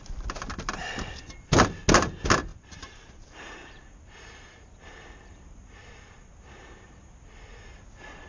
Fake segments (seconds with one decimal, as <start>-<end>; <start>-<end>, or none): 2.5-7.0